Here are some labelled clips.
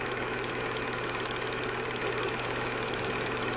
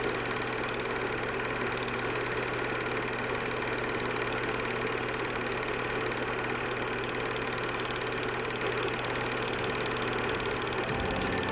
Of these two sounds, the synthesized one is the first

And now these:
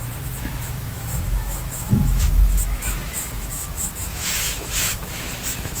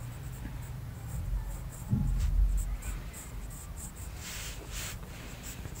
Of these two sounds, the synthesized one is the first